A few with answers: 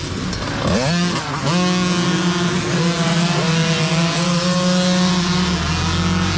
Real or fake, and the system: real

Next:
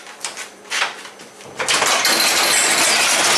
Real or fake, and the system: real